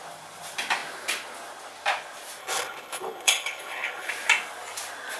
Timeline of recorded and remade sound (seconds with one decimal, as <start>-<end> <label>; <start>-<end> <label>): 0.0-2.4 recorded; 2.4-4.1 remade; 4.1-5.2 recorded